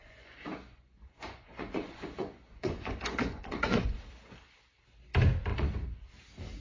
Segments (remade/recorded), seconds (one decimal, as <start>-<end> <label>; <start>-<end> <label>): 0.0-4.0 remade; 4.0-5.5 recorded; 5.5-6.1 remade; 6.1-6.6 recorded